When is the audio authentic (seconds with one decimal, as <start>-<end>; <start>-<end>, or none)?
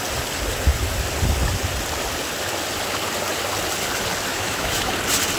0.0-4.3; 4.9-5.4